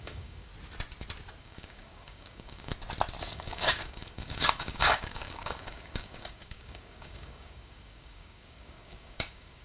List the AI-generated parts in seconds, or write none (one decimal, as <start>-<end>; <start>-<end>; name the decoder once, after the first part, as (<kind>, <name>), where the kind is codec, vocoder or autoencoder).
0.0-0.5 (codec, DAC); 1.4-2.7; 3.2-9.6